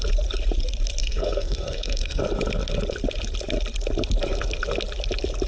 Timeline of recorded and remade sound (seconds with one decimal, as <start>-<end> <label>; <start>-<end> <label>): 0.0-1.0 recorded; 1.0-2.2 remade; 2.2-5.5 recorded